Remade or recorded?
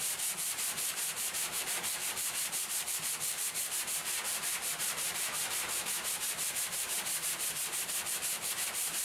remade